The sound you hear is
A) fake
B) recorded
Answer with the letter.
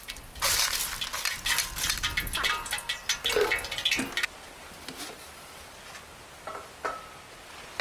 B